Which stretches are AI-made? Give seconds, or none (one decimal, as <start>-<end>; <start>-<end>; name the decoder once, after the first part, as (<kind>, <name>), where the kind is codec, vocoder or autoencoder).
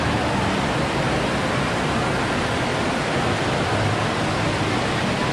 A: none